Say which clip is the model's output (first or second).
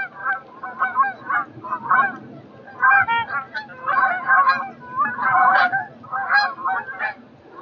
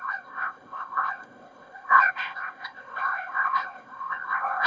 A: second